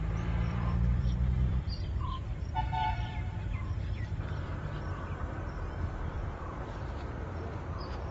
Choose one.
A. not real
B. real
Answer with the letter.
A